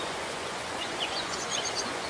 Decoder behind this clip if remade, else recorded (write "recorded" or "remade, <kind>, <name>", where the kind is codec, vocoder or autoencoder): remade, vocoder, Vocos